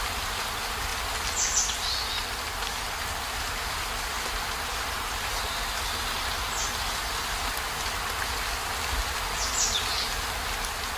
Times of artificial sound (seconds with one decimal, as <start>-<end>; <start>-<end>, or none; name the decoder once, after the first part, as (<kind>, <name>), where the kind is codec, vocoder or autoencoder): none